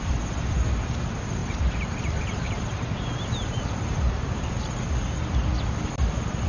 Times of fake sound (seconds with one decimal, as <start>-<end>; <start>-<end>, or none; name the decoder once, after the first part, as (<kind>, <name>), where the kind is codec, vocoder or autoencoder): 1.4-5.3 (vocoder, BigVGAN v2)